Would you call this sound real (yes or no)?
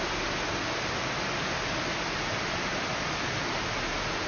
yes